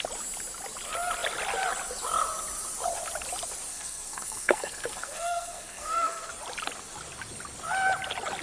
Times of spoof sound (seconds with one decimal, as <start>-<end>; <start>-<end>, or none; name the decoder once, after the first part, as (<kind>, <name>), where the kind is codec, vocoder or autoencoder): 3.7-6.3 (codec, SNAC)